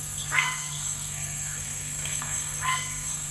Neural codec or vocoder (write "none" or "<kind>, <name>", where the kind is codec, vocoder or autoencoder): codec, SNAC